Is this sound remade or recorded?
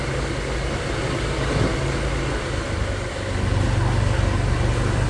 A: recorded